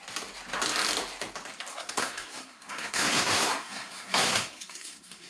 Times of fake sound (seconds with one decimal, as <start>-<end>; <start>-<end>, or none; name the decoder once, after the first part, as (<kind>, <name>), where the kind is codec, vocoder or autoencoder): 1.7-5.3 (codec, SNAC)